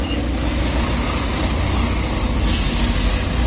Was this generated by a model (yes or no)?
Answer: no